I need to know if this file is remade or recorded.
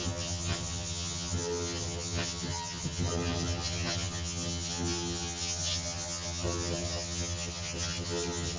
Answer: remade